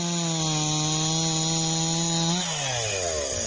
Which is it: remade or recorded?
recorded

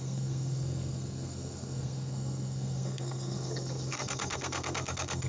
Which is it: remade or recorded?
remade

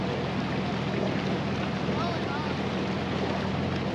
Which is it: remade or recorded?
recorded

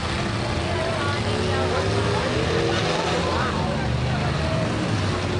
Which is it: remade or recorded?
recorded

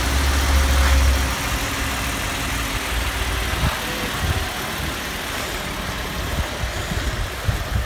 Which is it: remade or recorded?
recorded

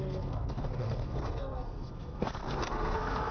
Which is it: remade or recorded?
remade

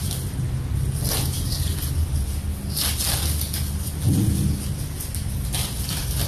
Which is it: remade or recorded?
recorded